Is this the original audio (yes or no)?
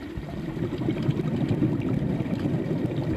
yes